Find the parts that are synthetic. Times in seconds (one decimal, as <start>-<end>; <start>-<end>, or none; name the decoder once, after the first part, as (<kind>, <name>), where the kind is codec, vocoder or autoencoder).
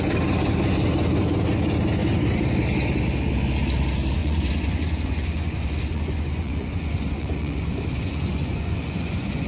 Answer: 4.2-9.5 (vocoder, Vocos)